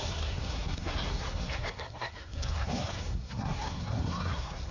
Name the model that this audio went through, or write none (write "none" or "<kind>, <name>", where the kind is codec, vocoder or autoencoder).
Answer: codec, SNAC